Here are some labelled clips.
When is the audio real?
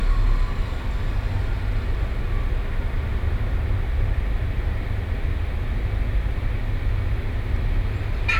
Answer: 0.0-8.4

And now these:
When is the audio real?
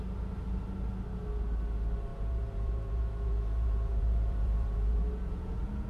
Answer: 0.0-2.1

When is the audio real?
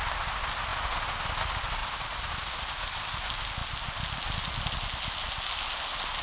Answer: 0.0-6.2